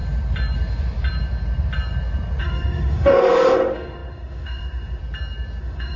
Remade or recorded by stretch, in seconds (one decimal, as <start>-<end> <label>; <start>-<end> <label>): 0.0-2.4 recorded; 2.4-5.0 remade; 5.0-5.6 recorded; 5.6-6.0 remade